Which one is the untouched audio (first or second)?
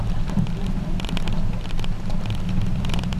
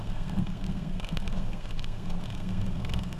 first